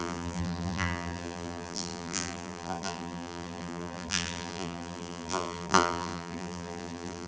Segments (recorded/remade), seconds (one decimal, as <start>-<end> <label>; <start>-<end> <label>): 0.0-7.3 remade